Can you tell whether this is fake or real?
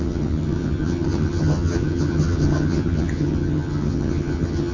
fake